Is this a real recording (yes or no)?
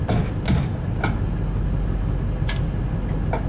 yes